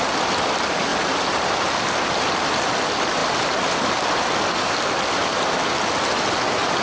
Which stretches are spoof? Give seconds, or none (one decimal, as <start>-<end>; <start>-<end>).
none

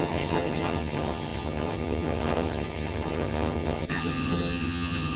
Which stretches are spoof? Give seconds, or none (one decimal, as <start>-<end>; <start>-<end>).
0.0-5.2

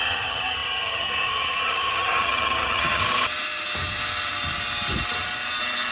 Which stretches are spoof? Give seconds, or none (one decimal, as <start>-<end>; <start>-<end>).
0.0-3.0

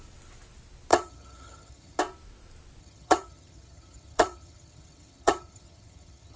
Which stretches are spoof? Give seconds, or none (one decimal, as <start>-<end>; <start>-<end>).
0.9-2.0; 2.8-6.4

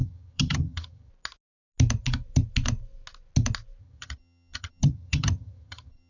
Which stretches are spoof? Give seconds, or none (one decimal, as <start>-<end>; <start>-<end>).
0.0-1.1; 3.8-6.1